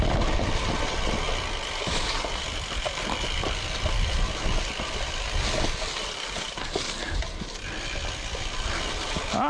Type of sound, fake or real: real